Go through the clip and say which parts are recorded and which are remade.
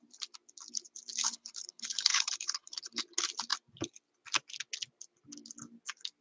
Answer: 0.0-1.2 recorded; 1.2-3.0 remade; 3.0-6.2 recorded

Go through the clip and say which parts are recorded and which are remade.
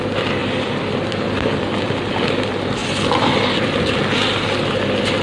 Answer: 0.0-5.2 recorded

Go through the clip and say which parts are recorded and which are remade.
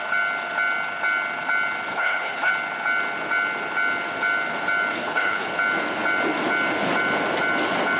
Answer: 0.0-1.9 recorded; 1.9-2.5 remade; 2.5-4.9 recorded; 4.9-5.5 remade; 5.5-8.0 recorded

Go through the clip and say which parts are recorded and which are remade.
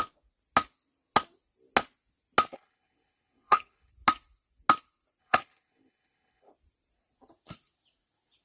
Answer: 0.0-2.5 recorded; 2.5-3.9 remade; 3.9-5.2 recorded; 5.2-6.5 remade; 6.5-8.4 recorded